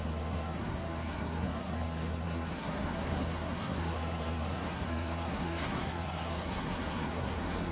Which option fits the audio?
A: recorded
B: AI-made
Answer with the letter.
B